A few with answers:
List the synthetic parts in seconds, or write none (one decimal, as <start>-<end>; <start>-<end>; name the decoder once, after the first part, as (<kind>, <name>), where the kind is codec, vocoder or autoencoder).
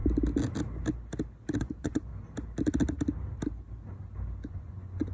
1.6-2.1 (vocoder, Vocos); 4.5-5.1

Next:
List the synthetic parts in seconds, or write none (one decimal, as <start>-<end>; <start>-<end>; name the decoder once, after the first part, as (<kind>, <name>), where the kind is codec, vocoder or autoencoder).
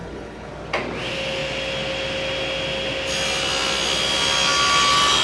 0.0-0.5 (codec, HILCodec)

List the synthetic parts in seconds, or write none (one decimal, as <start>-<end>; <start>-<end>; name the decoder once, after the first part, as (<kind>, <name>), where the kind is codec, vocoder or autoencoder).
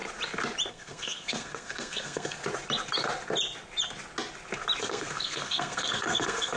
0.7-2.4 (codec, SNAC); 4.8-6.6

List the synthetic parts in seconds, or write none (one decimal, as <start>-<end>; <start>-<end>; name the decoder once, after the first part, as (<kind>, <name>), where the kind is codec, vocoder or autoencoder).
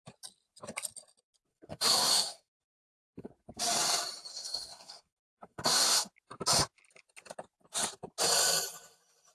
1.5-3.3 (codec, SNAC); 4.3-6.1